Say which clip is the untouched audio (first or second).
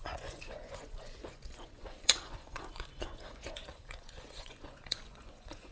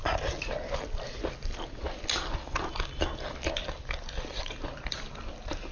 second